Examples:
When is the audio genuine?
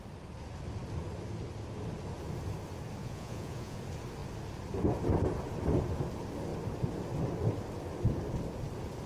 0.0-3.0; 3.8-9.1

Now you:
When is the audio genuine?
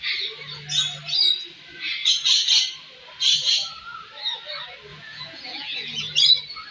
0.0-4.9; 6.3-6.7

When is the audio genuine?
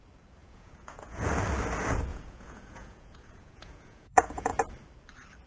0.0-0.4; 1.3-2.1; 4.6-5.5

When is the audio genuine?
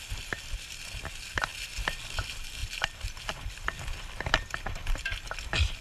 0.0-5.8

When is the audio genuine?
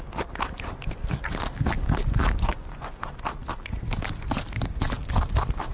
0.0-2.5; 3.0-5.7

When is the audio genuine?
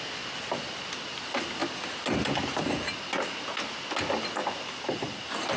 0.0-5.6